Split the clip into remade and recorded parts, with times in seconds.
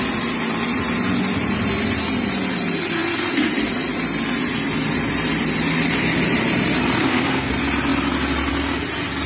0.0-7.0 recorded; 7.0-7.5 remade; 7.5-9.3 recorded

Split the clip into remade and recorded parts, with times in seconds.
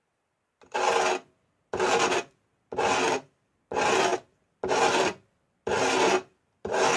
0.0-7.0 recorded